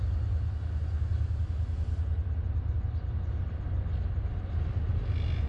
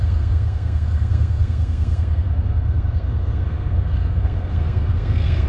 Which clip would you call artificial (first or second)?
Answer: second